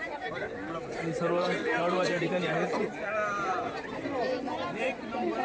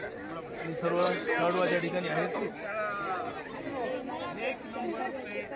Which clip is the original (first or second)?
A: second